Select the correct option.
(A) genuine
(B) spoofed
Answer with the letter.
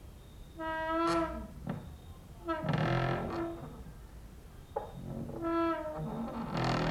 A